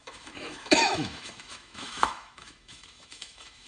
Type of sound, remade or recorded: remade